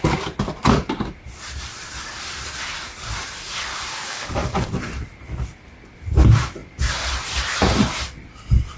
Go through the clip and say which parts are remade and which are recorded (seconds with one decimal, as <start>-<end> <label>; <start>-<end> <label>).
0.0-3.9 recorded; 3.9-4.7 remade; 4.7-8.8 recorded